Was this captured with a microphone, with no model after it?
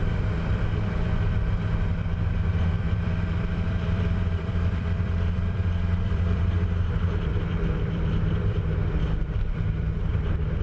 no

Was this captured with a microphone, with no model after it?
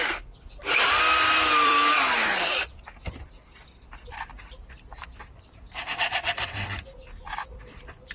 no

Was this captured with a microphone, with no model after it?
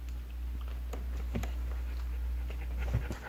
no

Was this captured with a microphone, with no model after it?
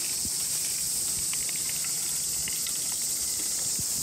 yes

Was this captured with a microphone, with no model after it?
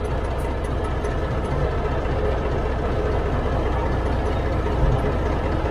yes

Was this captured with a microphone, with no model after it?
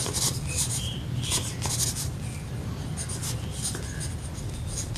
yes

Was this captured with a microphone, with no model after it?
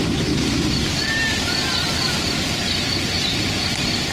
yes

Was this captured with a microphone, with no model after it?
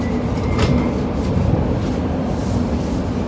yes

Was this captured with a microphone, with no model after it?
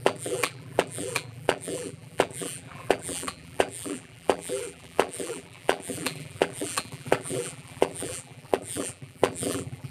no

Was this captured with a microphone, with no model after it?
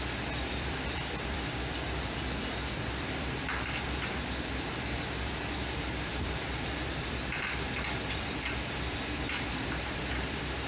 no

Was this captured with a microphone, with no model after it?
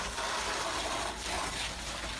yes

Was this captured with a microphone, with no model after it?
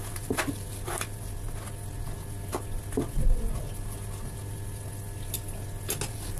yes